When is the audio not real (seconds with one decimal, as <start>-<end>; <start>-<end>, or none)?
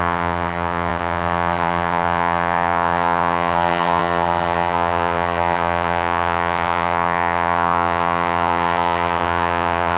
0.0-10.0